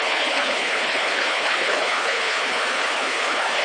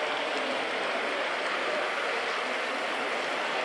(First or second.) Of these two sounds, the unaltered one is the second